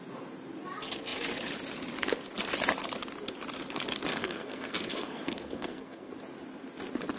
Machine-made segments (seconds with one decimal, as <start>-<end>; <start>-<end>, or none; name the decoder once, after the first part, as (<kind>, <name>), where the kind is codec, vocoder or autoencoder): 4.1-6.1 (codec, SNAC)